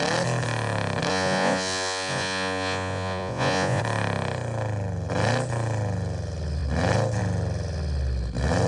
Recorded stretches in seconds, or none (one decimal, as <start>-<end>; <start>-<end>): 0.0-1.1; 3.8-8.7